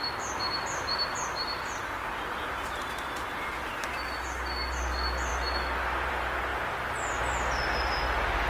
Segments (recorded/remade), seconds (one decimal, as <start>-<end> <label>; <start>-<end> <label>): 0.0-8.5 recorded